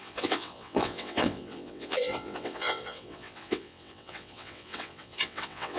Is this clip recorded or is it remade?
remade